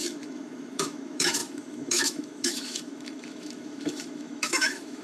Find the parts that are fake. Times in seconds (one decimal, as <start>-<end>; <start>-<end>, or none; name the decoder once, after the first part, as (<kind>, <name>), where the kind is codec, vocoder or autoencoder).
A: 0.0-5.0 (autoencoder, DAC-VAE)

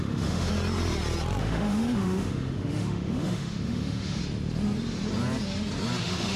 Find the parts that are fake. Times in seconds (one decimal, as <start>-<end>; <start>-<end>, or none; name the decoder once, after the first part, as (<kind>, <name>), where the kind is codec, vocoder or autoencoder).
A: 0.0-0.5 (autoencoder, DAC-VAE); 1.4-4.2; 6.0-6.4

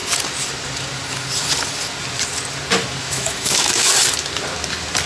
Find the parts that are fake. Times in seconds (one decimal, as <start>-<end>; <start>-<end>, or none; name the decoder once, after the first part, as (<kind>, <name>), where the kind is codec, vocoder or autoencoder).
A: 3.0-3.9 (autoencoder, DAC-VAE)

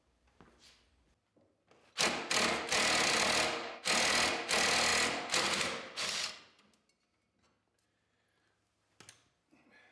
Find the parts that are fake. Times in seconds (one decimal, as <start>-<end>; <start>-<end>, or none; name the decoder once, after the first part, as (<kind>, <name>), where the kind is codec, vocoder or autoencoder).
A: none

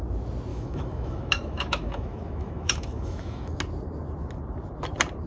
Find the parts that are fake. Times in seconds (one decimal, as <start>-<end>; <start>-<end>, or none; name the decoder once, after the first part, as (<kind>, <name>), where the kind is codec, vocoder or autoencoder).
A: 0.5-3.6 (autoencoder, DAC-VAE)

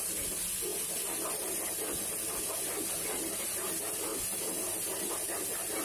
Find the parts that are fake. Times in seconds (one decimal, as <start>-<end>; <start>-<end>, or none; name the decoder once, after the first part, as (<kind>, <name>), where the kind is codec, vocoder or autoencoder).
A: none

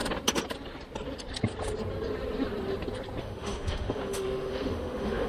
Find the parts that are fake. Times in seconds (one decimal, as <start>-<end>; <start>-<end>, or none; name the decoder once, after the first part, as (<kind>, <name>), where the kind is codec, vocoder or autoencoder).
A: 3.2-5.3 (autoencoder, DAC-VAE)

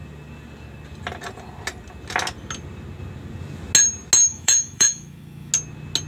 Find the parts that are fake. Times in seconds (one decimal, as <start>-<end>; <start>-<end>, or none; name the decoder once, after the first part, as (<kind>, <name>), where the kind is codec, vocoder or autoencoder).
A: 4.2-5.5 (autoencoder, DAC-VAE)